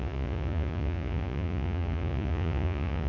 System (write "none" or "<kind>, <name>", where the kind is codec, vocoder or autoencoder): vocoder, Vocos